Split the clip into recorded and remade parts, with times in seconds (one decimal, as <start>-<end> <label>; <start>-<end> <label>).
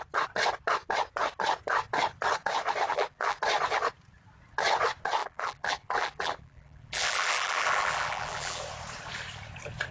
0.0-2.9 recorded; 2.9-3.4 remade; 3.4-5.2 recorded; 5.2-8.6 remade; 8.6-9.9 recorded